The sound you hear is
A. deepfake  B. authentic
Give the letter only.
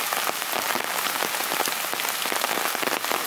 B